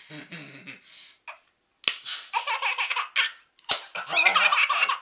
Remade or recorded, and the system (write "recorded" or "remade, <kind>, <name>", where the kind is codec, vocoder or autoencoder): recorded